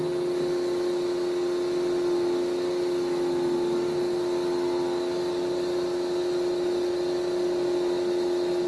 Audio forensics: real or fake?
real